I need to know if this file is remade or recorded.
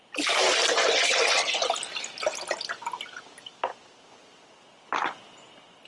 recorded